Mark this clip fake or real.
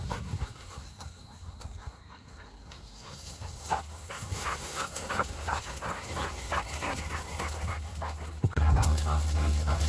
fake